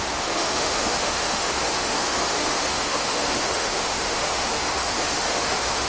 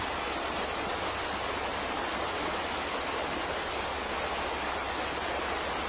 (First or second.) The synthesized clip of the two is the first